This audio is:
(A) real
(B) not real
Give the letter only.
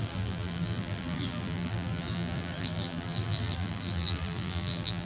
B